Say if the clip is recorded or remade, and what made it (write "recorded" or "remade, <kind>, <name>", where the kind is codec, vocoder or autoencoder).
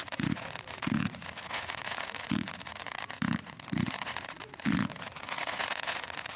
remade, vocoder, Vocos